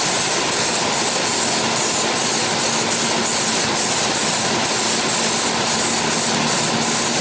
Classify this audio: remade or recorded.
recorded